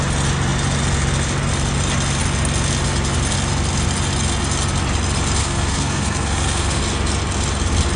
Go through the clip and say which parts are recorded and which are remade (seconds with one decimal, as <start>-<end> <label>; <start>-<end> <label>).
0.0-5.4 recorded; 5.4-6.8 remade; 6.8-8.0 recorded